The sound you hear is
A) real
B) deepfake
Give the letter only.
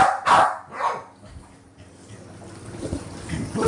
A